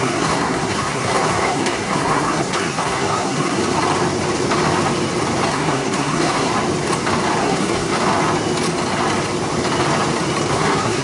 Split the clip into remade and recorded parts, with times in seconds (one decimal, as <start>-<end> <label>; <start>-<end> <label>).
0.0-3.6 remade; 3.6-5.5 recorded; 5.5-6.5 remade; 6.5-7.4 recorded; 7.4-7.9 remade; 7.9-10.5 recorded; 10.5-11.0 remade